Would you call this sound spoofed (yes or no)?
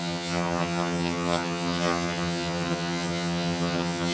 yes